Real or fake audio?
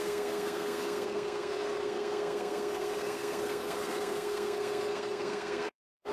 fake